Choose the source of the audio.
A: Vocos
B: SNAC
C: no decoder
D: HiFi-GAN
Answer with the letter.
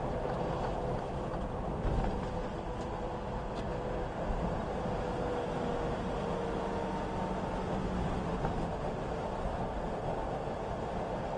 C